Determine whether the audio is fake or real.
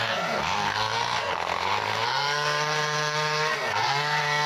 fake